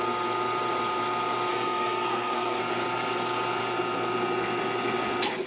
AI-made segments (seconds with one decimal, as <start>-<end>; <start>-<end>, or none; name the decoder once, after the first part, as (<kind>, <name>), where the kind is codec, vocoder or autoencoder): 1.5-2.6 (codec, SNAC)